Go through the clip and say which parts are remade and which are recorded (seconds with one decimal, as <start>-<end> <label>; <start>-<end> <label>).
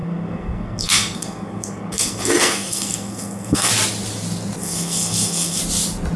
0.0-3.7 remade; 3.7-4.6 recorded; 4.6-5.6 remade; 5.6-6.2 recorded